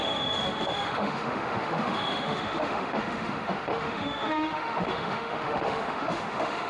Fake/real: fake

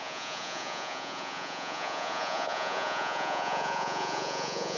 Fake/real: fake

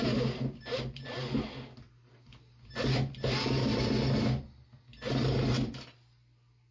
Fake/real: real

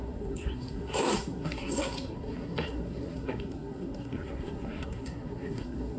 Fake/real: fake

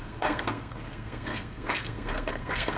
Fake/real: fake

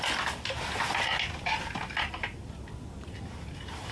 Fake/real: real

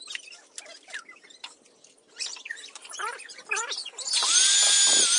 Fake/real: real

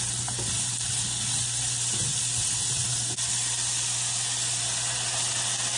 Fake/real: real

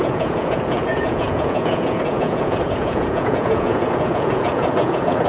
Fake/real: fake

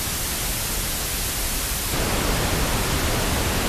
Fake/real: real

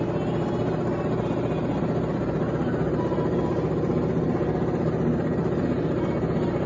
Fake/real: real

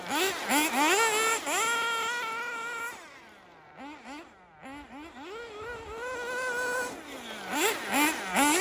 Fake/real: real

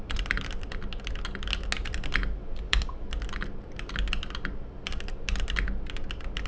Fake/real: real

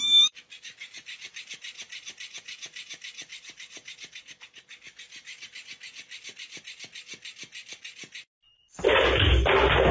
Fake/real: real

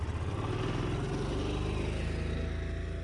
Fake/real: real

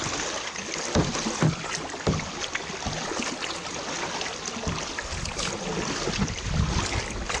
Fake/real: real